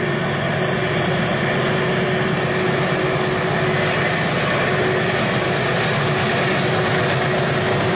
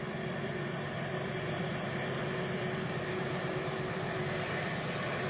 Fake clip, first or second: second